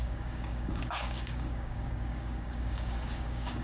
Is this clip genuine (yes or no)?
no